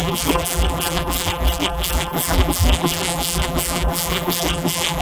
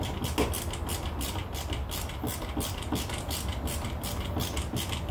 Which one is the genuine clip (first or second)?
second